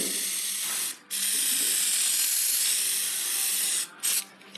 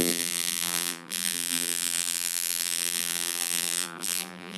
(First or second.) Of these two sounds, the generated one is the second